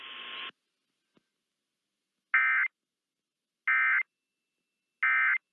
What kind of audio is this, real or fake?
real